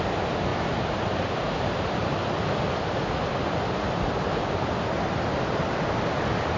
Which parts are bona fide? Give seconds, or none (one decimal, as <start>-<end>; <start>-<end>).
0.0-6.6